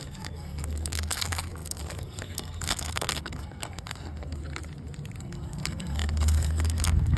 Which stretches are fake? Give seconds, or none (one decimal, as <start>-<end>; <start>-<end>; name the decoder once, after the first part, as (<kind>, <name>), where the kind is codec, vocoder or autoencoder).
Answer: 0.0-4.4 (codec, SNAC); 5.2-7.2